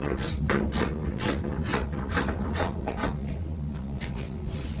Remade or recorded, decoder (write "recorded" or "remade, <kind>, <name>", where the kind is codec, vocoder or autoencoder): remade, vocoder, WaveNeXt